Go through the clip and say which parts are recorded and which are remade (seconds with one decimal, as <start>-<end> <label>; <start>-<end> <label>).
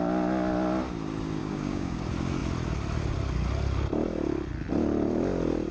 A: 0.0-1.4 recorded; 1.4-2.0 remade; 2.0-5.7 recorded